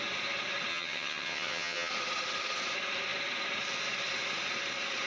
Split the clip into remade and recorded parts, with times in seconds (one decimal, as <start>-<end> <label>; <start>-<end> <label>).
0.0-0.7 recorded; 0.7-1.9 remade; 1.9-5.1 recorded